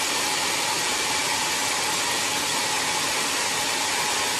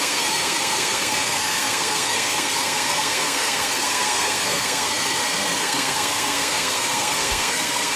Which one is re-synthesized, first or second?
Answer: second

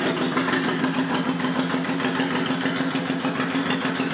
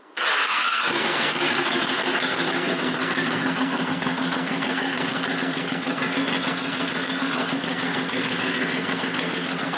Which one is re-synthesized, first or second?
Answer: second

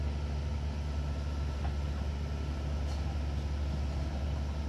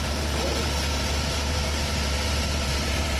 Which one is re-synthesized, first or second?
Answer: second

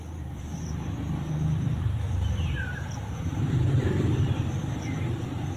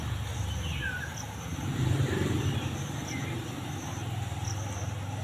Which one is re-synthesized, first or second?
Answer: first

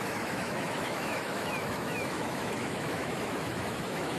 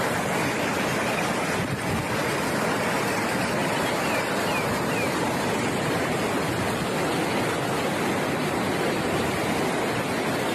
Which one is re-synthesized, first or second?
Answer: first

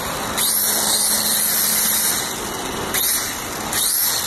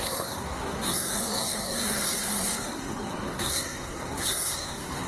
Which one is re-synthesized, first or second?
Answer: second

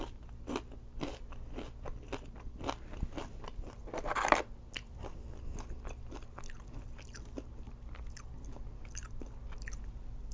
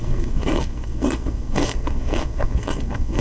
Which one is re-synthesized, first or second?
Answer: second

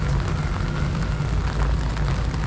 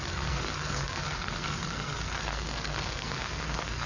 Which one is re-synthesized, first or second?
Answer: second